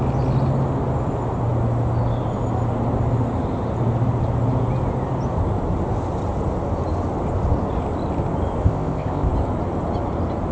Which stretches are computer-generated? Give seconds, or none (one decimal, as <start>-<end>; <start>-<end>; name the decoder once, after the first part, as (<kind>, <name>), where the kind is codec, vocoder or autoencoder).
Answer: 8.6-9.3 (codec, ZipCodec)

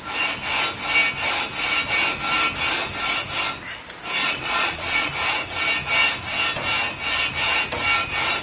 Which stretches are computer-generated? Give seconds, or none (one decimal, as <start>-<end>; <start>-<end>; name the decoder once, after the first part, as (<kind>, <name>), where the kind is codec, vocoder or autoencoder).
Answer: 4.2-5.1 (vocoder, Vocos)

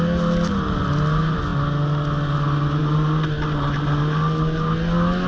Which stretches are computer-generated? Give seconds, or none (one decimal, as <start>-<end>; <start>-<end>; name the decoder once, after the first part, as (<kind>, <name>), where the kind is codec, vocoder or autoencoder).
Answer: none

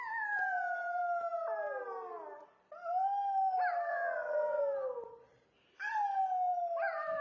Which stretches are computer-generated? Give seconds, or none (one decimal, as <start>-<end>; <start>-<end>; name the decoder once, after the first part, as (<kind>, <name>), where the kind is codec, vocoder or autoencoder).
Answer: 3.9-4.6 (vocoder, WaveNeXt)